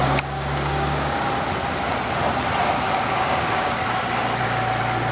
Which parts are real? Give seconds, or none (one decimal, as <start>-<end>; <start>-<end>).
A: 1.2-2.6; 3.8-5.1